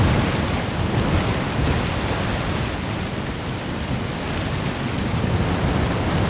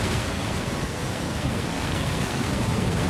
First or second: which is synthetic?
second